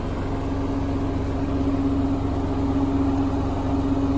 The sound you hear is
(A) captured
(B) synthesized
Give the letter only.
A